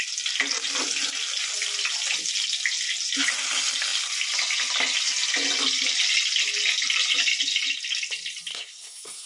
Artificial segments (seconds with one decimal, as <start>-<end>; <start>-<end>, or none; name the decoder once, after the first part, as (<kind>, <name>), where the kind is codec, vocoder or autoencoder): 8.5-9.3 (codec, SNAC)